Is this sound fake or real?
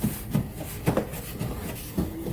real